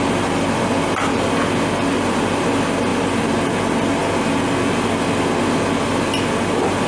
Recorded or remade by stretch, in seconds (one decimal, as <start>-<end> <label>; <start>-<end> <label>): 0.0-6.9 recorded

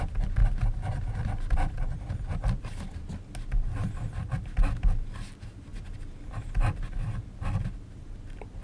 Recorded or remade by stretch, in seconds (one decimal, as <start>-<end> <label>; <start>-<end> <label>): 0.0-0.4 recorded; 0.4-1.8 remade; 1.8-8.6 recorded

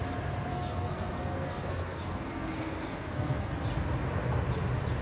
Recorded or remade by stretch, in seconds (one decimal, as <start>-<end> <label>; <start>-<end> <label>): 0.0-0.5 recorded; 0.5-3.5 remade; 3.5-5.0 recorded

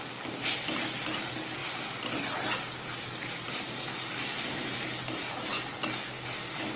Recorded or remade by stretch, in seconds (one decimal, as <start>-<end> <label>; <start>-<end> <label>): 0.0-6.8 recorded

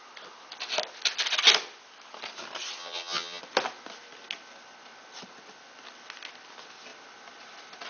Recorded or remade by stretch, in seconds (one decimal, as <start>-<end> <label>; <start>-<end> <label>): 0.0-2.8 recorded; 2.8-3.4 remade; 3.4-7.9 recorded